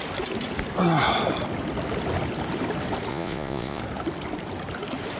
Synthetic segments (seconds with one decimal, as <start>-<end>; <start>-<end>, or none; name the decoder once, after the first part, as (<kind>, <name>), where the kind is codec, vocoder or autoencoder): 3.1-3.8 (vocoder, Vocos)